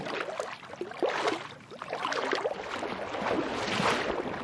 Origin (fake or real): real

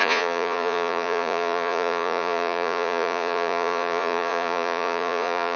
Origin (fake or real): fake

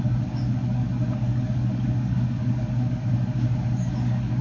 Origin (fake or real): fake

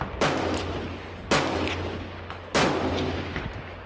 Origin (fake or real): real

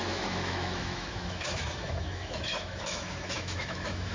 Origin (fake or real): fake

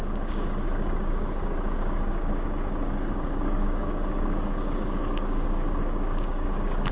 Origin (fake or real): fake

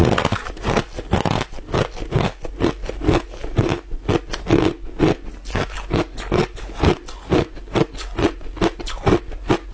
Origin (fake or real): real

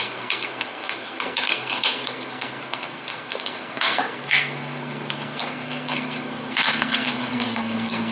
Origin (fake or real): fake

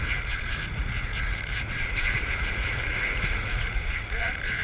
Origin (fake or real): fake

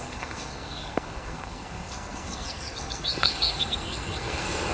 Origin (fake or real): fake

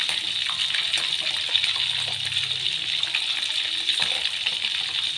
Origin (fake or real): real